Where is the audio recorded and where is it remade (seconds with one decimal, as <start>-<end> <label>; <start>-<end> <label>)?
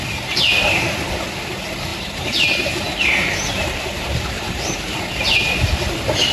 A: 0.0-1.9 recorded; 1.9-5.0 remade; 5.0-6.3 recorded